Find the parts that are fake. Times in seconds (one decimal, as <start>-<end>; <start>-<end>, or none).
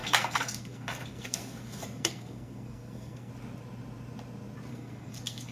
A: 0.0-3.3; 4.7-5.5